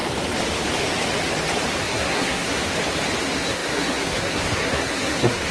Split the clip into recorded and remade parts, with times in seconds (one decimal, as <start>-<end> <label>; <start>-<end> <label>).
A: 0.0-1.8 recorded; 1.8-2.6 remade; 2.6-3.2 recorded; 3.2-5.5 remade